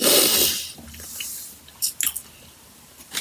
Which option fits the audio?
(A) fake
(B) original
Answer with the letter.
B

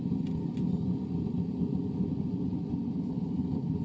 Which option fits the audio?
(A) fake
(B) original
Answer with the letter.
B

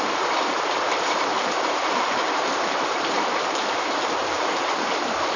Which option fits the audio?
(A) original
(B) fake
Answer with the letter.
B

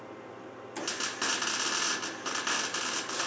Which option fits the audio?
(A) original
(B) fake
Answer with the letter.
A